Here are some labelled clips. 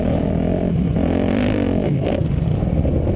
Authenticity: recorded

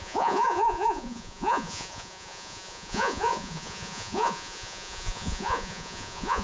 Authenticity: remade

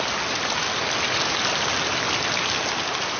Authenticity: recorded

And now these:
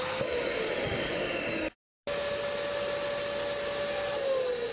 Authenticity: recorded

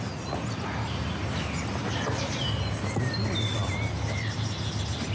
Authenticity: recorded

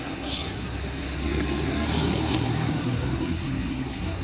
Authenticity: remade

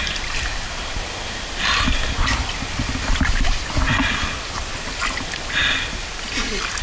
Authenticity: recorded